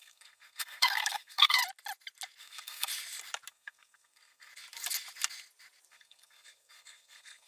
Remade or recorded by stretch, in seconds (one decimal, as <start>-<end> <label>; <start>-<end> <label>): 0.0-1.6 remade; 1.6-2.4 recorded; 2.4-2.9 remade; 2.9-3.5 recorded; 3.5-4.5 remade; 4.5-5.9 recorded; 5.9-7.5 remade